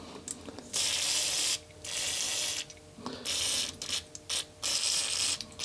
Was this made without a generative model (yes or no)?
yes